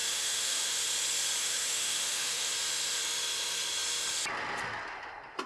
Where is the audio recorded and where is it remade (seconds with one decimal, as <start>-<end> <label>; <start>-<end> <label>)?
0.0-0.7 remade; 0.7-1.4 recorded; 1.4-2.5 remade; 2.5-5.5 recorded